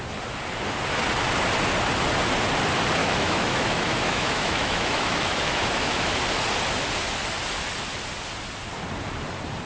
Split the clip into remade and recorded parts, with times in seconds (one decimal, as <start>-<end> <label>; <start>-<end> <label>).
0.0-3.0 recorded; 3.0-6.2 remade; 6.2-9.7 recorded